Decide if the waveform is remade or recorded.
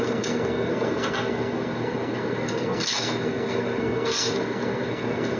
remade